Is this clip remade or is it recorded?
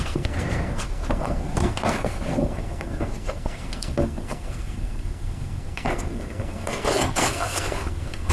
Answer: remade